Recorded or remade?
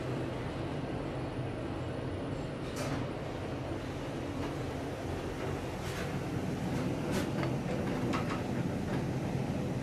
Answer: recorded